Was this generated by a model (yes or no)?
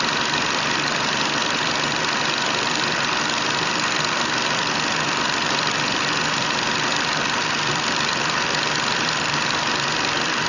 yes